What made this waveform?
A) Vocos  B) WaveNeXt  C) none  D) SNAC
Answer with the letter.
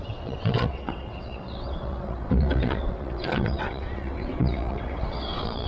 B